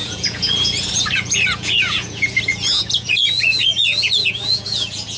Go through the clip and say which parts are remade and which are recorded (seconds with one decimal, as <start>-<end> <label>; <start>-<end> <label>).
0.0-5.2 remade